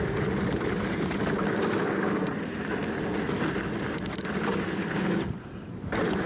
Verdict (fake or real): real